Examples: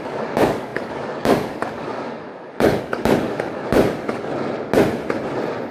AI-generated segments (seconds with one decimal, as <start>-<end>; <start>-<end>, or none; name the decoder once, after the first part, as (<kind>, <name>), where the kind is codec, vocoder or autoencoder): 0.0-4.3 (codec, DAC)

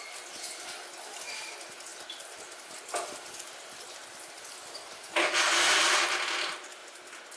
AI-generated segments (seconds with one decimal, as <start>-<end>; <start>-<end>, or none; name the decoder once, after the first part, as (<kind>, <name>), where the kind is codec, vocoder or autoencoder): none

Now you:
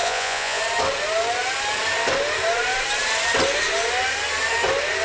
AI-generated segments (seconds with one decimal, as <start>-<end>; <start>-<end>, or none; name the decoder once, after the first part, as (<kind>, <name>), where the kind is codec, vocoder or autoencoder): 0.0-0.6 (vocoder, Vocos)

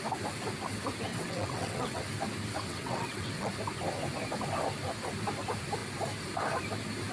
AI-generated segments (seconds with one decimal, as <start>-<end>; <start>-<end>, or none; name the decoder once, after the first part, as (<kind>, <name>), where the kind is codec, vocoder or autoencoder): 1.1-2.0 (vocoder, WaveNeXt); 2.7-3.5

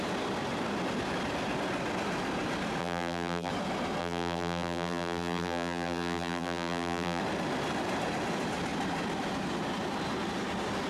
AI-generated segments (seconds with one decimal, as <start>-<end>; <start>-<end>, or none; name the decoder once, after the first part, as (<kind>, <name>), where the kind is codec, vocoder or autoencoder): 2.8-3.5 (vocoder, BigVGAN v2); 4.0-7.2

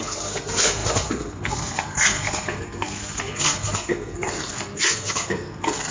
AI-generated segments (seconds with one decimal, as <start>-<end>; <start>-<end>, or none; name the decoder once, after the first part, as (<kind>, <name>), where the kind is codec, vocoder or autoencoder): 0.0-5.9 (codec, SNAC)

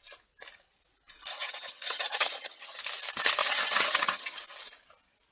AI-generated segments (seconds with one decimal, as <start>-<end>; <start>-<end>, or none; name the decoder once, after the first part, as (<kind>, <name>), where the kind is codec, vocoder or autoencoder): 1.3-2.8 (vocoder, HiFi-GAN); 3.4-4.4

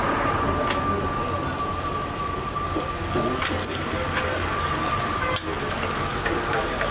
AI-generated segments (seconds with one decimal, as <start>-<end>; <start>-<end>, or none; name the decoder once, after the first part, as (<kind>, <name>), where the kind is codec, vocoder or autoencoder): 3.6-4.9 (codec, DAC); 5.5-6.9